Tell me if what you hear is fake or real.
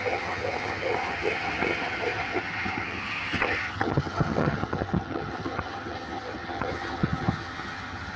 fake